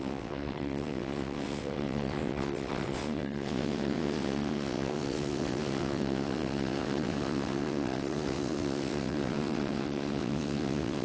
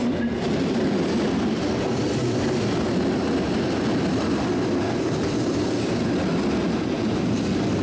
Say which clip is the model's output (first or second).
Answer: first